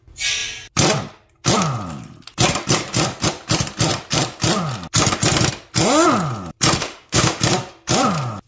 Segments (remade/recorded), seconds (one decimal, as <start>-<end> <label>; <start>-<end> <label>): 0.0-6.8 recorded; 6.8-7.4 remade; 7.4-8.5 recorded